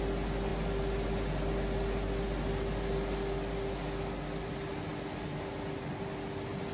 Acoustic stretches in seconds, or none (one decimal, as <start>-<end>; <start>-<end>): 0.0-6.7